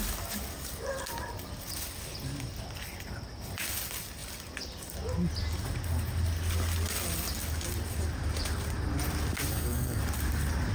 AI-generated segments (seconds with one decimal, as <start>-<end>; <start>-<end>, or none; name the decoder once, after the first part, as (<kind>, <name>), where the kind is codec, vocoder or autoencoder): 9.5-10.0 (codec, SNAC)